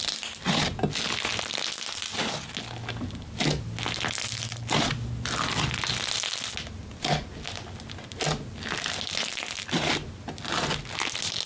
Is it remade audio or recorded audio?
recorded